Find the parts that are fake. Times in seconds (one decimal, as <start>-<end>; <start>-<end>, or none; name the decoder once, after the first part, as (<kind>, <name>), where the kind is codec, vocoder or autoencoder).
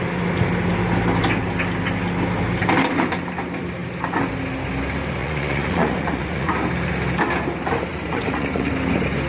5.2-6.5 (vocoder, Vocos); 7.9-8.7